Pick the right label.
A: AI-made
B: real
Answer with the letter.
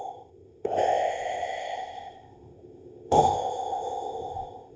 A